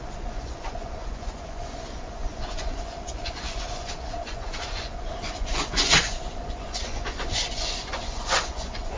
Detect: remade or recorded remade